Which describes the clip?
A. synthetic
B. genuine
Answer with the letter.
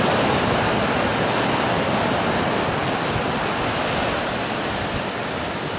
B